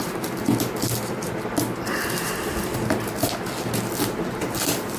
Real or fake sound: real